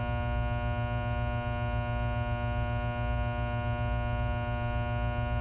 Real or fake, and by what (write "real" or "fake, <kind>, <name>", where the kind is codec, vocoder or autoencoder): real